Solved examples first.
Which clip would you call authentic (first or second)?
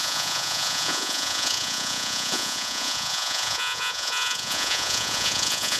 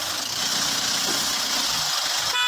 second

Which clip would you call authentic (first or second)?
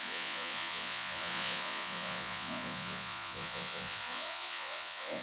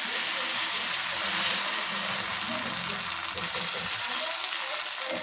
second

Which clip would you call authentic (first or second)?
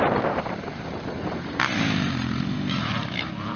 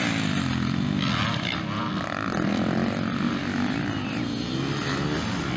second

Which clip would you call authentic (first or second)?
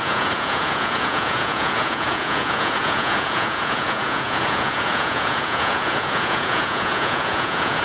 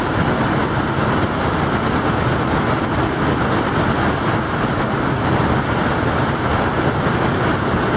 second